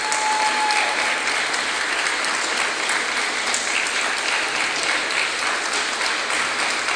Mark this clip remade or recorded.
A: recorded